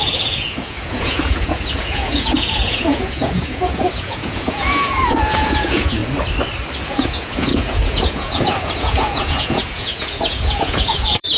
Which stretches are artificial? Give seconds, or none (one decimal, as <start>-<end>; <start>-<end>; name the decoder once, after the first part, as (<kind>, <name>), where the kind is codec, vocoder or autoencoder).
0.0-6.0 (vocoder, Vocos); 6.8-11.4

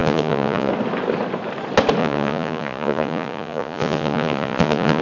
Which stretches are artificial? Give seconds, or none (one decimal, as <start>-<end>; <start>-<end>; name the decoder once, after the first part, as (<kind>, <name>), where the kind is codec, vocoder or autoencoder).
0.0-0.7 (vocoder, Vocos); 2.0-5.0

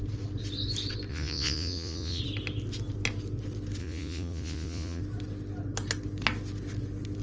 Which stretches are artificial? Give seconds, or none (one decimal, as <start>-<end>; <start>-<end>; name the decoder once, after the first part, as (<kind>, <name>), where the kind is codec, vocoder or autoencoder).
1.1-2.2 (vocoder, Vocos); 3.8-5.0

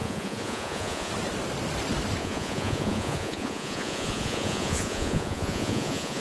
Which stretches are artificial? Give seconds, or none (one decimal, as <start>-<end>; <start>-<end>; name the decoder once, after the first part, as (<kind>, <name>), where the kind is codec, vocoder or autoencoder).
0.0-1.1 (vocoder, Vocos); 2.2-6.2